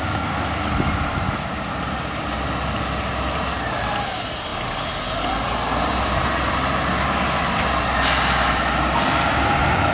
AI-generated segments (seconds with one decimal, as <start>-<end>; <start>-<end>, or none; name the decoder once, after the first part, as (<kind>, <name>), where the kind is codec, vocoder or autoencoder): none